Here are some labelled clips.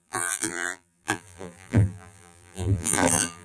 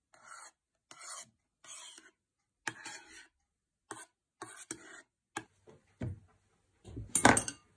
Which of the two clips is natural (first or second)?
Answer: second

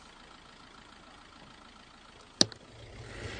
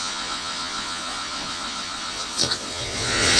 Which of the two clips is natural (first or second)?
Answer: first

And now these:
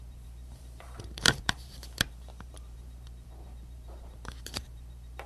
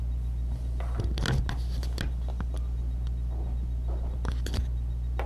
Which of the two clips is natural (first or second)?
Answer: second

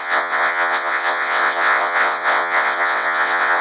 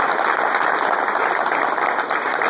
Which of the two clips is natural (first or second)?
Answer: second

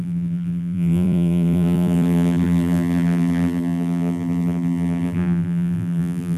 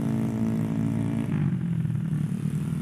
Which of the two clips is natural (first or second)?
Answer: second